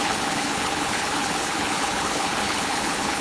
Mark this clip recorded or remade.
remade